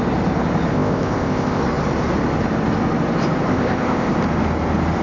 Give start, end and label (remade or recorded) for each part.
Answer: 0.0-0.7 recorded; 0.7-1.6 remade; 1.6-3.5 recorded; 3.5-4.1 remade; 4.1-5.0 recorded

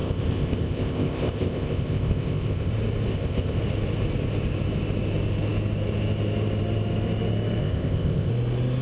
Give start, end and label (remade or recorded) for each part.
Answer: 0.0-2.7 remade; 2.7-3.1 recorded; 3.1-3.6 remade; 3.6-7.6 recorded; 7.6-8.3 remade; 8.3-8.8 recorded

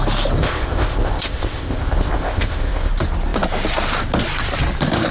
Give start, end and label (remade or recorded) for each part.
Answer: 0.0-0.4 recorded; 0.4-2.9 remade; 2.9-5.1 recorded

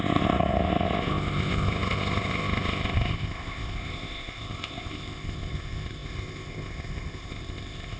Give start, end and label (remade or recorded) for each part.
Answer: 0.0-8.0 remade